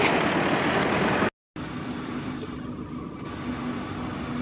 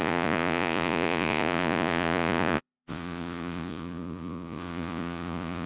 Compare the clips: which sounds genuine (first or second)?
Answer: first